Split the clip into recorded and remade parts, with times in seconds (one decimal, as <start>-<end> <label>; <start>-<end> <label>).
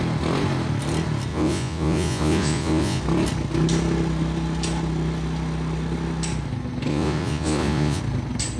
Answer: 0.0-1.3 recorded; 1.3-3.0 remade; 3.0-6.9 recorded; 6.9-8.0 remade; 8.0-8.6 recorded